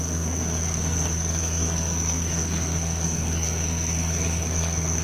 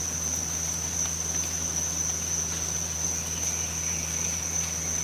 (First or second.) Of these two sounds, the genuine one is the second